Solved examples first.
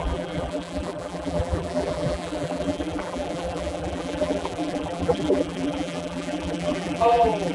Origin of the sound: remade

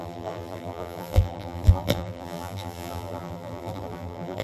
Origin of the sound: remade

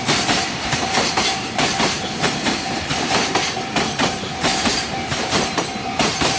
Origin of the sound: remade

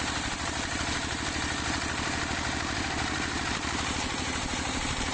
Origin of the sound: remade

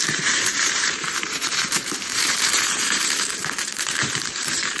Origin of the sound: remade